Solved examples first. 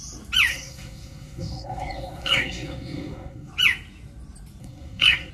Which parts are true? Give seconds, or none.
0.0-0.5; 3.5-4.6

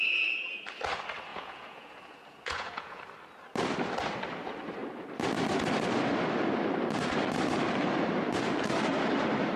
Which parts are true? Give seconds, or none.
0.0-1.3; 3.0-9.6